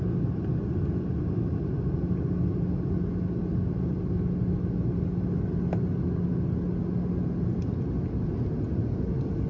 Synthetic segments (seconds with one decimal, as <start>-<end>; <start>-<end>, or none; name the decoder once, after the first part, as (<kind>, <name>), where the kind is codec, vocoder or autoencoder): none